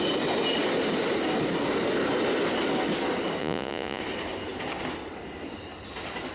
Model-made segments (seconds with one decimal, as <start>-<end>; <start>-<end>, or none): 3.4-4.0

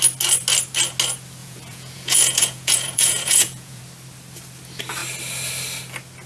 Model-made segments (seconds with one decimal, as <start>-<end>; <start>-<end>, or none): 1.4-3.8

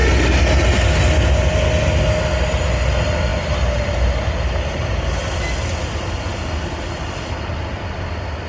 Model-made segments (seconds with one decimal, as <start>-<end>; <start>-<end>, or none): none

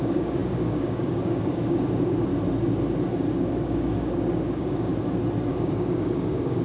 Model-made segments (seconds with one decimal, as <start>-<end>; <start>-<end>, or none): 0.0-2.3; 3.4-4.9; 5.5-6.6

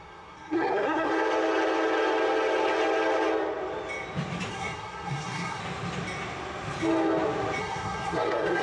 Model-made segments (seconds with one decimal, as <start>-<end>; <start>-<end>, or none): 0.0-1.1; 4.5-5.6; 7.6-8.6

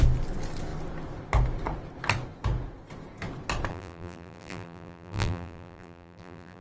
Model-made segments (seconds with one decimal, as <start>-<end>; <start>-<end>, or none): 3.7-6.6

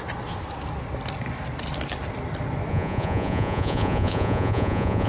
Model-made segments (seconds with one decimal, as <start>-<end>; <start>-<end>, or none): 2.7-5.1